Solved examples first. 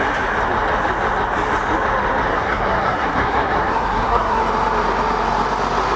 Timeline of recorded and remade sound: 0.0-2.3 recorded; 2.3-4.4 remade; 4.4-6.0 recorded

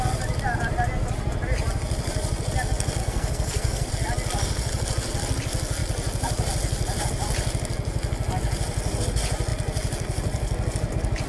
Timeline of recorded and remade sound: 0.0-3.0 recorded; 3.0-3.9 remade; 3.9-11.3 recorded

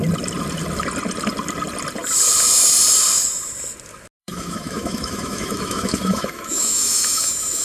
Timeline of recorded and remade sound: 0.0-4.2 recorded; 4.2-7.6 remade

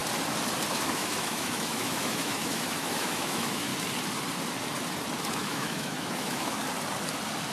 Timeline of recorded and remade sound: 0.0-0.7 recorded; 0.7-3.7 remade; 3.7-5.3 recorded; 5.3-6.6 remade; 6.6-7.5 recorded

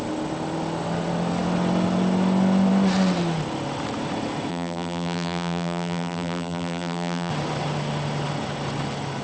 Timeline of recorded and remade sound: 0.0-4.5 recorded; 4.5-7.3 remade; 7.3-9.2 recorded

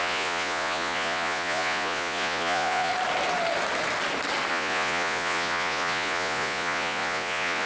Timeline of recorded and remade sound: 0.0-2.9 remade; 2.9-4.5 recorded; 4.5-7.7 remade

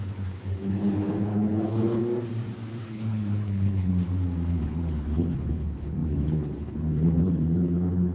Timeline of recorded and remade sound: 0.0-2.0 remade; 2.0-2.8 recorded; 2.8-3.9 remade; 3.9-4.5 recorded; 4.5-8.1 remade

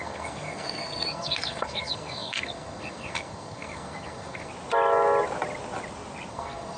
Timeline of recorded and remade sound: 0.0-4.5 remade; 4.5-6.3 recorded; 6.3-6.8 remade